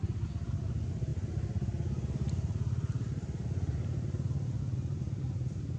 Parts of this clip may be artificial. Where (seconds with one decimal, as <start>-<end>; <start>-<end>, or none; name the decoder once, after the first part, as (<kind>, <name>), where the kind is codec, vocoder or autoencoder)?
none